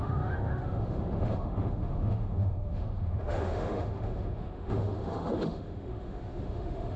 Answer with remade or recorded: remade